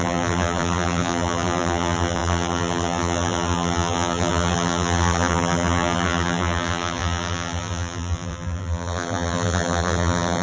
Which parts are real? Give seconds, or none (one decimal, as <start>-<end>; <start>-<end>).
none